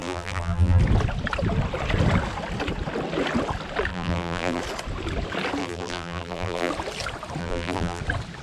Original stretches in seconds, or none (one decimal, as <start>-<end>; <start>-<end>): 0.8-3.9; 4.6-5.6; 6.7-7.4; 8.0-8.4